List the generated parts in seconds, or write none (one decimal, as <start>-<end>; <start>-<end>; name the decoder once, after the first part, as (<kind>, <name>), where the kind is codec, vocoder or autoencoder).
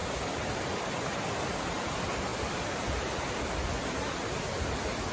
2.3-3.5 (vocoder, BigVGAN v2)